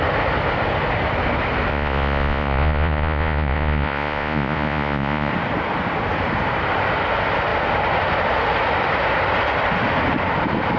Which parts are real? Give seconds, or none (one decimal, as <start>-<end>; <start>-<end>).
0.0-1.7; 5.3-10.8